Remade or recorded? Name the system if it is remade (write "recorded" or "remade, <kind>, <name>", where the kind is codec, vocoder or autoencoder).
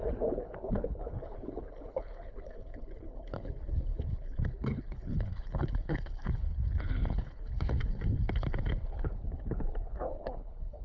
remade, codec, HILCodec